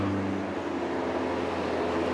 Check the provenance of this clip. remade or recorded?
recorded